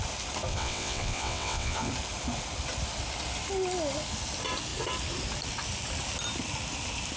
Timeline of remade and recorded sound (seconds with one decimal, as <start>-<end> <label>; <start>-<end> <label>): 0.0-0.5 recorded; 0.5-1.9 remade; 1.9-7.2 recorded